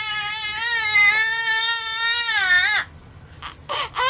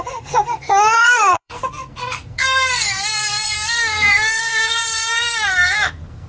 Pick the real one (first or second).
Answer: first